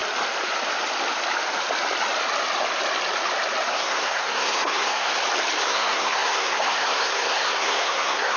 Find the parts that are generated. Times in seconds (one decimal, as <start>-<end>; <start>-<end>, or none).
3.7-5.1; 5.6-8.4